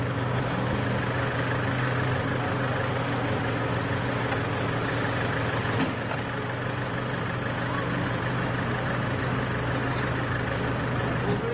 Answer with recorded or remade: recorded